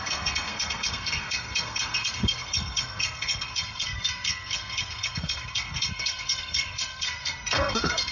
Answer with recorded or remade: remade